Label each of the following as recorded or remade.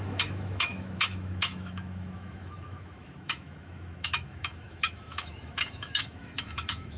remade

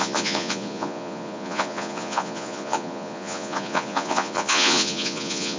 remade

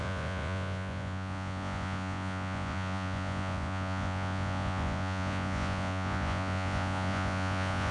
remade